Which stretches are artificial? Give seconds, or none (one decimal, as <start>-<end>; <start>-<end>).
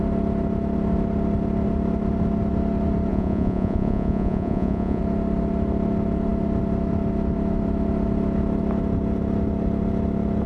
3.1-5.0